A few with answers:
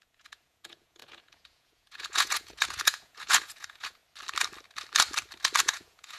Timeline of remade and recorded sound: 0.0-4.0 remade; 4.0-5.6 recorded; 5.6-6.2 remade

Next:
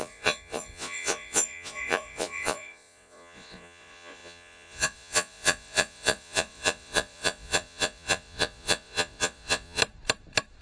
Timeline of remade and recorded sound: 0.0-9.8 remade; 9.8-10.6 recorded